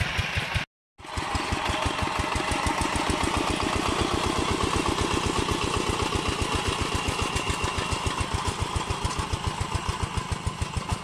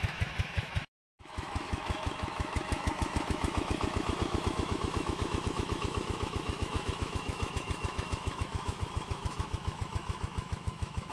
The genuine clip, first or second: first